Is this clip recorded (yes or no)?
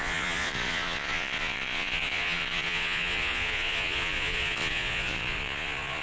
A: no